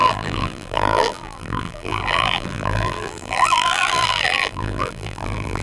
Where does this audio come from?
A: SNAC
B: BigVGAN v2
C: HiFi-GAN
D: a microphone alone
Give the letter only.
B